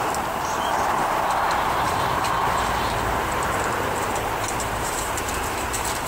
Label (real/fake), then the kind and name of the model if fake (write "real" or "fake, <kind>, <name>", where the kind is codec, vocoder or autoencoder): fake, vocoder, BigVGAN v2